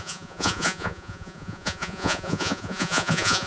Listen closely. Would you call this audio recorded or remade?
remade